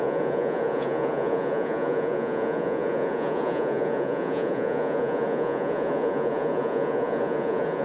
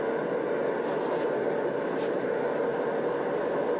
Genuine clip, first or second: second